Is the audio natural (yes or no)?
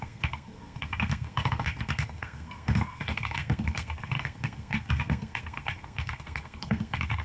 no